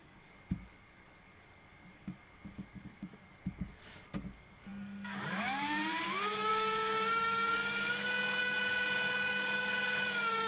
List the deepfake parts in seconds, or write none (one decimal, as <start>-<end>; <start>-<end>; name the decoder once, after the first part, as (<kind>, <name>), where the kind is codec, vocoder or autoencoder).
0.0-10.5 (codec, DAC)